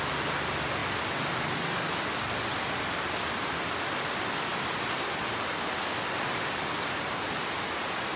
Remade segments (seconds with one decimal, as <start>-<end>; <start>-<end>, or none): none